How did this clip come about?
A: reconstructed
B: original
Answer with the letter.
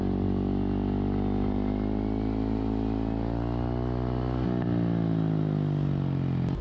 B